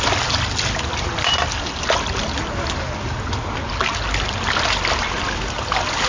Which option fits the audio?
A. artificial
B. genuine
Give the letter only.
B